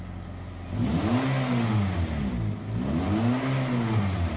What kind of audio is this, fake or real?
real